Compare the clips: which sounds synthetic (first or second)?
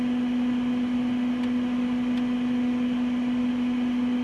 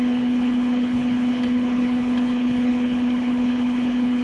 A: second